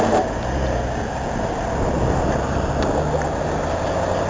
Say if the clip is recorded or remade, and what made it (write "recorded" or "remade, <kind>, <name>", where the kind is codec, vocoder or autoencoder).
recorded